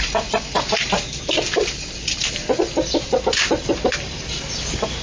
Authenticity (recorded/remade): recorded